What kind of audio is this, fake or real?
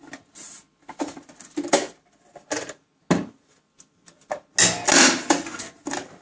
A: real